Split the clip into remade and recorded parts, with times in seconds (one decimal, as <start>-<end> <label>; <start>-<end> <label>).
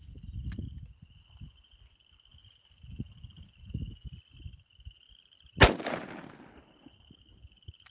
0.0-7.9 recorded